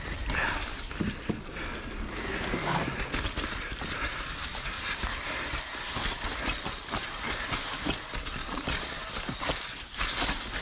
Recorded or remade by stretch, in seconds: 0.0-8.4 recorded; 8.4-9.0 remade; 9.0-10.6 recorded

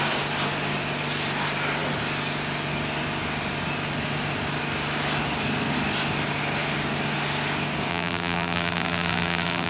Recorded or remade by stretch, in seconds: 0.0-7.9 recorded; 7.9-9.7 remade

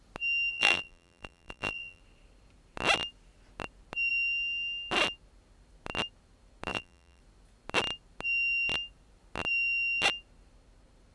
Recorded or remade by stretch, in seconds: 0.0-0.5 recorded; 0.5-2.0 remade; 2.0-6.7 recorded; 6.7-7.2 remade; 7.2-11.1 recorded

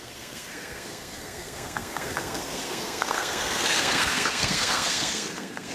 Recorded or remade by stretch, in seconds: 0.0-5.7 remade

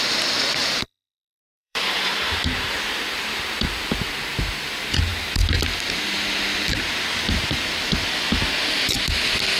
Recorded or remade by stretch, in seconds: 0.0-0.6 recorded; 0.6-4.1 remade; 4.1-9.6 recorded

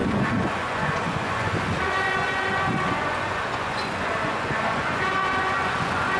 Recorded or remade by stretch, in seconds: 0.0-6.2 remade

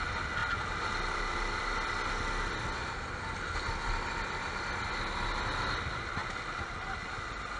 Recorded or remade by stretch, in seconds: 0.0-7.6 recorded